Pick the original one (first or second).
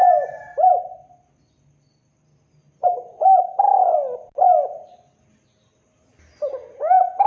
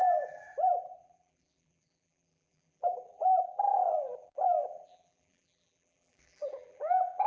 first